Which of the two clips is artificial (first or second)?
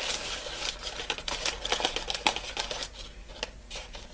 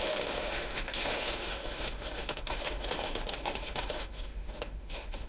second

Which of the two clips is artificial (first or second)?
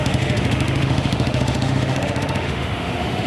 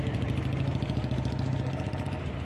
first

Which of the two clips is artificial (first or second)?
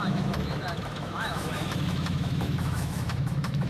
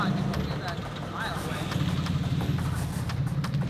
first